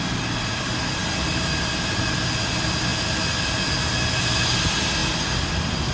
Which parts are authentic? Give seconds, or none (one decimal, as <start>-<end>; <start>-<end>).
0.0-5.9